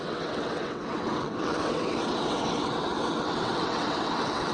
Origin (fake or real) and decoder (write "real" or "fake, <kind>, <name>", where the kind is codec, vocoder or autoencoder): fake, vocoder, WaveNeXt